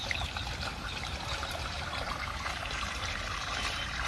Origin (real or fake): fake